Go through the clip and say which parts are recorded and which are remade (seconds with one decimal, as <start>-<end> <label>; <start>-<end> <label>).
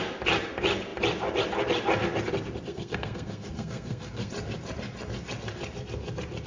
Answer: 0.0-2.7 recorded; 2.7-4.3 remade; 4.3-6.5 recorded